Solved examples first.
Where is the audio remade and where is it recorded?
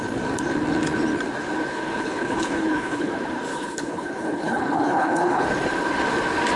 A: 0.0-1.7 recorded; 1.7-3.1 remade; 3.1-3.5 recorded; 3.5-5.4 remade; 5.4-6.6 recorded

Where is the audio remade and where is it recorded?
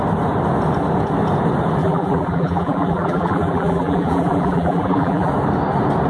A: 0.0-1.8 recorded; 1.8-5.3 remade; 5.3-6.1 recorded